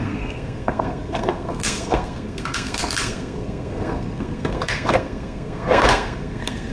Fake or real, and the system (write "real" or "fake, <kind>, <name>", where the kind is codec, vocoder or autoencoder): fake, codec, SNAC